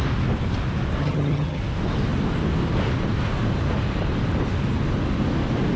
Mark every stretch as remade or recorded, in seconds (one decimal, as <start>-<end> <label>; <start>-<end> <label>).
0.0-1.0 recorded; 1.0-1.6 remade; 1.6-5.8 recorded